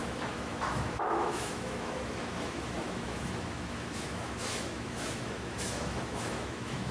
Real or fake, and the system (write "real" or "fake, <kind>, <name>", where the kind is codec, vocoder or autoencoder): fake, autoencoder, DAC-VAE